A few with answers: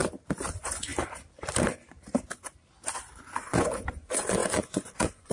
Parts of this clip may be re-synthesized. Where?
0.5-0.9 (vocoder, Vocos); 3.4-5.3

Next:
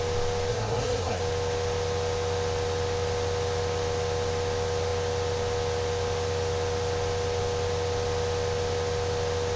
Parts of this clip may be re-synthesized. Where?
0.5-1.2 (codec, SNAC)

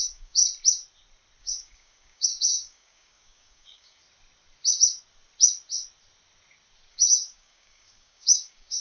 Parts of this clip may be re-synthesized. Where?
0.0-0.4 (codec, DAC); 1.4-4.0; 6.9-8.8